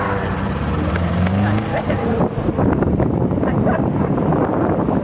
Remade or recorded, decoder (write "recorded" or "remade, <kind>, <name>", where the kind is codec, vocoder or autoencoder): remade, vocoder, BigVGAN v2